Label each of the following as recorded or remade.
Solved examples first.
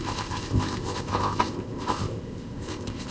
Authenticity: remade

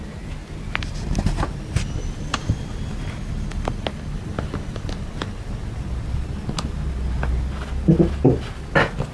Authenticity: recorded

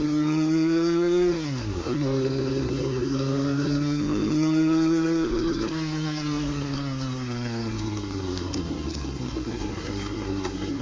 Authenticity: remade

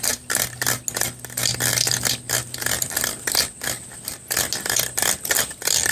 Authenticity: recorded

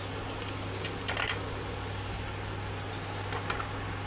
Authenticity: recorded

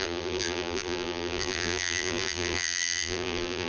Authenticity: remade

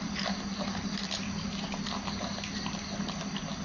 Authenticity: recorded